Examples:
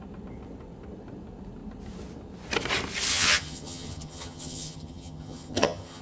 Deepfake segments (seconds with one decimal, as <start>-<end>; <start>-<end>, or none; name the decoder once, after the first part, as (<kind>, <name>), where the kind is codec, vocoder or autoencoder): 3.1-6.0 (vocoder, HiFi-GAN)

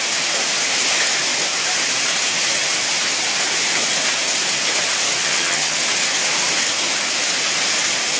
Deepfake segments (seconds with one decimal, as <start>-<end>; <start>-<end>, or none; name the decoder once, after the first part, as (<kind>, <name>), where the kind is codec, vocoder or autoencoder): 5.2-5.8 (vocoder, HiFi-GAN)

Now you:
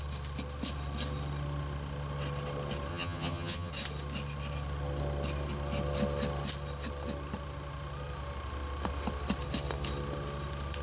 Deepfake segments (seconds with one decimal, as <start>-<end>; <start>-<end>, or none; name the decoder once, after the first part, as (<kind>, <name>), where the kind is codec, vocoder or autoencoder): 2.9-3.7 (vocoder, HiFi-GAN)